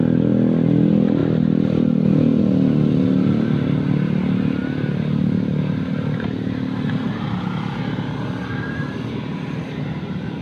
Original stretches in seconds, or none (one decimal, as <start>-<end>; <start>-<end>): 0.0-10.4